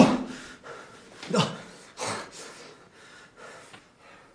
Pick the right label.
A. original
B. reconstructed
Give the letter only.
A